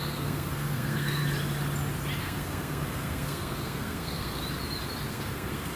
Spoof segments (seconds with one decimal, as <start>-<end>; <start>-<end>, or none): 0.0-1.2; 2.2-4.4; 5.1-5.8